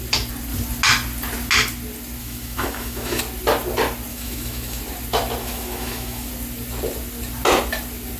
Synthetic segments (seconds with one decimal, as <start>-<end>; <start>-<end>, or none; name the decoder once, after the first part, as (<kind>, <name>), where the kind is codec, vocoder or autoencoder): 2.2-3.2 (autoencoder, DAC-VAE); 4.1-4.8; 5.4-6.3